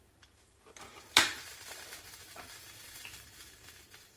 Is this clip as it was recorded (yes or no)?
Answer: no